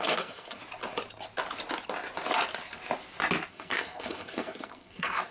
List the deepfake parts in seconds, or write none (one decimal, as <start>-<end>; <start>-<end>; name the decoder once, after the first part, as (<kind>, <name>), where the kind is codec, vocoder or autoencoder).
0.0-0.6 (codec, SNAC); 3.5-5.3

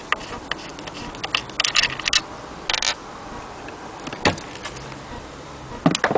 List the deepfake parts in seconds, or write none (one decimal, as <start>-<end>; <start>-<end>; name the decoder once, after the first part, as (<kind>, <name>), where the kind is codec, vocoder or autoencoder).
none

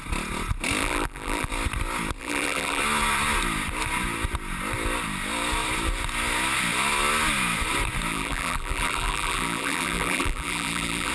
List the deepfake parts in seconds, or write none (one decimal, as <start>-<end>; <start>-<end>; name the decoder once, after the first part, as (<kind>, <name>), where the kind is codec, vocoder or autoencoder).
0.8-1.5 (vocoder, BigVGAN v2); 2.2-2.8; 8.1-11.1

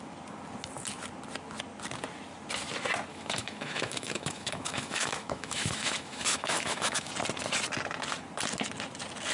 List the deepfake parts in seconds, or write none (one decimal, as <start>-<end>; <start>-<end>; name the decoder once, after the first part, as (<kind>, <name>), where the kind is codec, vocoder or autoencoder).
3.1-7.1 (autoencoder, DAC-VAE)

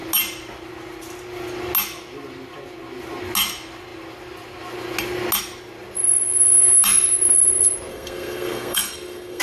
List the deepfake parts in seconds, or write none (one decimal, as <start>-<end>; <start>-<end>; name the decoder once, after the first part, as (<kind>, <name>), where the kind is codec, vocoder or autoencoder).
7.9-9.4 (codec, SNAC)

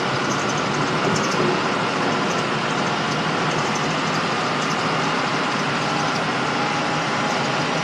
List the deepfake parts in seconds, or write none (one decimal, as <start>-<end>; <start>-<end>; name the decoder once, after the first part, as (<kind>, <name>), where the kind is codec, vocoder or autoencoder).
none

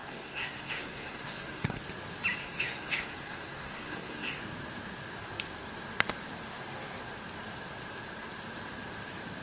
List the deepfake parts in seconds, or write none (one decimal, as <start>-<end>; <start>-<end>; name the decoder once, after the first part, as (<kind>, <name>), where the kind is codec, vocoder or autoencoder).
0.0-1.8 (codec, SNAC); 2.4-4.4

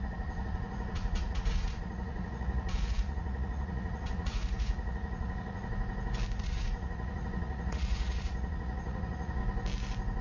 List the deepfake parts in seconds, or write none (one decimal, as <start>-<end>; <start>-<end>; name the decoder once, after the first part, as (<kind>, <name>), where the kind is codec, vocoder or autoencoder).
0.0-5.7 (vocoder, Vocos); 6.4-9.4